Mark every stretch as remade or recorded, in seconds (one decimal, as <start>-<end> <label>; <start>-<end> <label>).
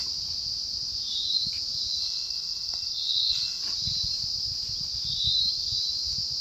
0.0-2.0 recorded; 2.0-3.6 remade; 3.6-6.4 recorded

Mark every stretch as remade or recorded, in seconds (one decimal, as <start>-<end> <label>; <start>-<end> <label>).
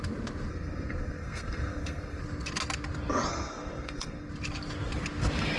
0.0-0.5 recorded; 0.5-2.2 remade; 2.2-3.3 recorded; 3.3-4.3 remade; 4.3-5.6 recorded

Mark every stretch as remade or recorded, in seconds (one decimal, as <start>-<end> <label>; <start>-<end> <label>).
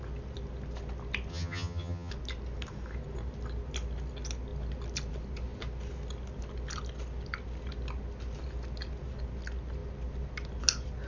0.0-1.3 recorded; 1.3-2.1 remade; 2.1-11.1 recorded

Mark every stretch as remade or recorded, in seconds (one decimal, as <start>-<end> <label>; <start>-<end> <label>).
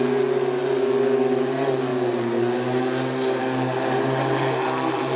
0.0-5.2 recorded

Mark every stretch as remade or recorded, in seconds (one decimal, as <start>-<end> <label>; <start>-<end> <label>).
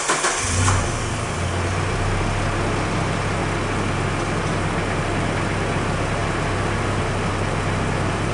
0.0-8.3 recorded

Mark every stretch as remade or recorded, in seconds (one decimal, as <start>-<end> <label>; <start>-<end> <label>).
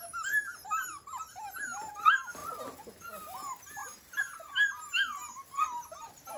0.0-6.4 recorded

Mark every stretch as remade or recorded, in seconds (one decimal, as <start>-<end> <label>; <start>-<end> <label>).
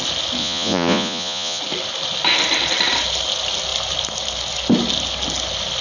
0.0-0.4 recorded; 0.4-1.6 remade; 1.6-5.8 recorded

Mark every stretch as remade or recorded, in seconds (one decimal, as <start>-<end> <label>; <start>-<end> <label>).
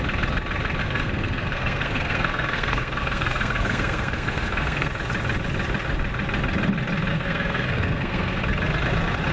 0.0-0.8 recorded; 0.8-4.9 remade; 4.9-7.1 recorded; 7.1-8.4 remade; 8.4-9.3 recorded